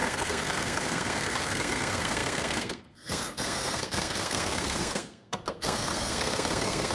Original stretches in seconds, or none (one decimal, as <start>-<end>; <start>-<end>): none